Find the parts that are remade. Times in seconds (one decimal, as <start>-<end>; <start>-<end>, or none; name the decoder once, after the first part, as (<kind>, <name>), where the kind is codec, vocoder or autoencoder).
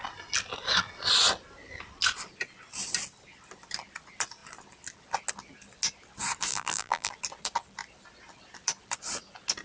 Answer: 6.5-7.1 (vocoder, BigVGAN v2)